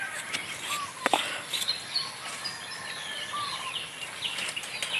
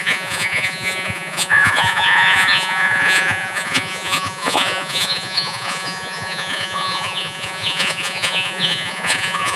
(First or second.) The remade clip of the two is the second